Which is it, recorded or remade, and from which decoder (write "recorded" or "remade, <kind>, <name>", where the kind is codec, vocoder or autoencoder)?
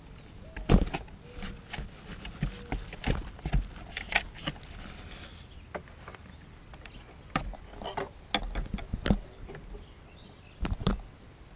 recorded